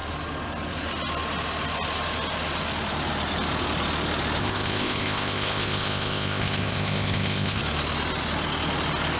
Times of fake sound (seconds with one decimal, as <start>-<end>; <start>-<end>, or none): 4.4-7.6